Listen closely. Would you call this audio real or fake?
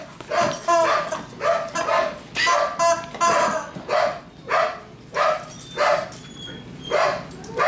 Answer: real